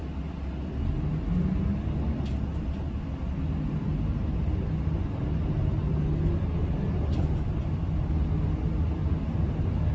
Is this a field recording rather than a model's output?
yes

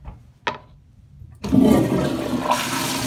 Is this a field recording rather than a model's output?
yes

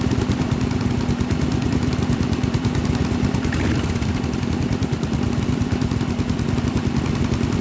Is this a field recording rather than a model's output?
no